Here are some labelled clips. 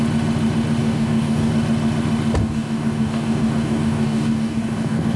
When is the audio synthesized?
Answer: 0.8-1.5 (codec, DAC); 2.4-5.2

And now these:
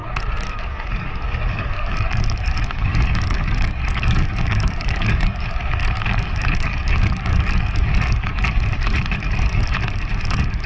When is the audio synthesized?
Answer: 0.5-10.7 (codec, DAC)

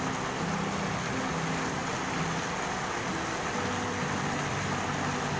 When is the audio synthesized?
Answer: none